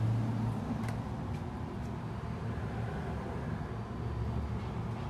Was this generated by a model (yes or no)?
no